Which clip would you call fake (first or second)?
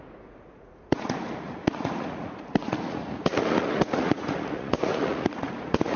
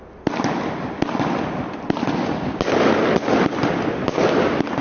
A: first